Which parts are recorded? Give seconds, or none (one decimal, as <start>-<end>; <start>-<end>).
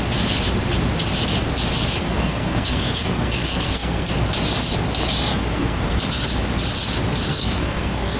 0.0-2.0; 4.1-5.3; 6.0-7.3